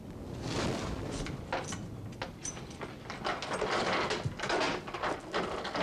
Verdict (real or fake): real